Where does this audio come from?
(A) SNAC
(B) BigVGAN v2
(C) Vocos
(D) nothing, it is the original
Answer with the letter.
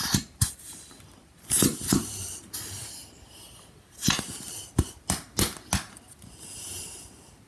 D